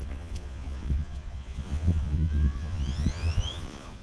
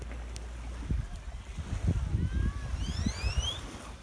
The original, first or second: second